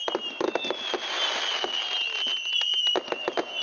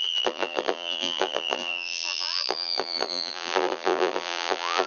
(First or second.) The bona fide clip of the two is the first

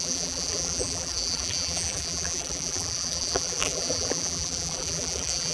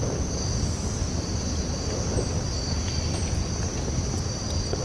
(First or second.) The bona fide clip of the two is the second